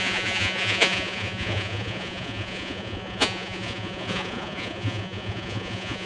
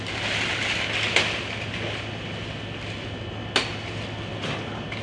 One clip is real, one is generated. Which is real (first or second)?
second